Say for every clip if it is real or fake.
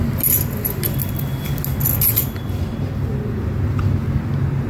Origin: real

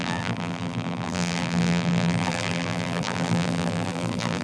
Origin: fake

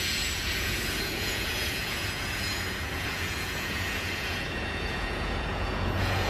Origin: fake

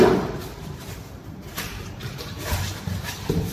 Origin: fake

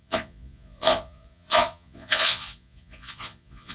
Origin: fake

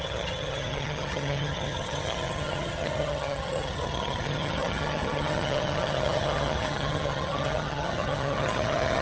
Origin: fake